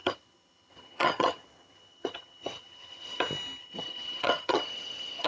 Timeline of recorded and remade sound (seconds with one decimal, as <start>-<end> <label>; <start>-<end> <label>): 0.0-3.2 remade; 3.2-3.6 recorded; 3.6-5.3 remade